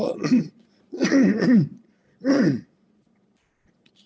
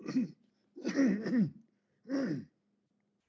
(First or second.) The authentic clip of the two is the second